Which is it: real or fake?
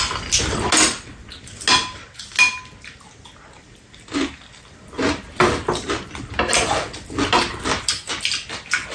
real